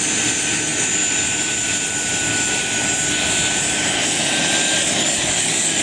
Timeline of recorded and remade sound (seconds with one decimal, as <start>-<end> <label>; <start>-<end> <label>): 0.0-4.8 recorded; 4.8-5.8 remade